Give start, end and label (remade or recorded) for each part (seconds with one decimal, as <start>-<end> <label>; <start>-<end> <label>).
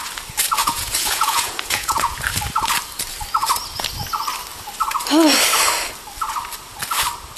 0.0-0.6 recorded; 0.6-2.2 remade; 2.2-7.4 recorded